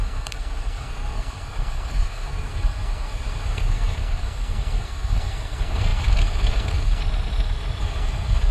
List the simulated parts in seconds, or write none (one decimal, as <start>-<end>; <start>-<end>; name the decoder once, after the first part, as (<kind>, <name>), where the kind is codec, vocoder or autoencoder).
0.0-7.0 (codec, SNAC); 7.8-8.5